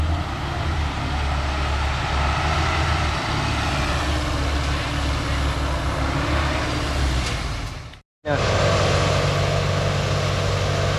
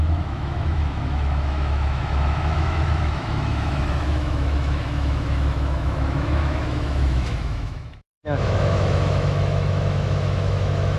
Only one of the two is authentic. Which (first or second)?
first